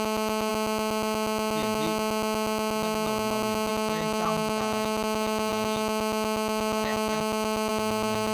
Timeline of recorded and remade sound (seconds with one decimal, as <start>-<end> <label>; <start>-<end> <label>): 0.0-0.5 remade; 0.5-3.7 recorded; 3.7-8.3 remade